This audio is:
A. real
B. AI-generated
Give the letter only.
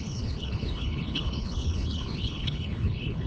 B